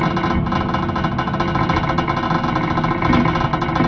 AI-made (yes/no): no